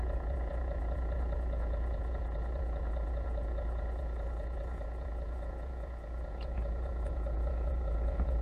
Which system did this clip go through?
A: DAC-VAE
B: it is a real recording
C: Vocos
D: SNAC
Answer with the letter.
C